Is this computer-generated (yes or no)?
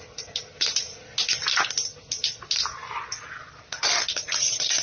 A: no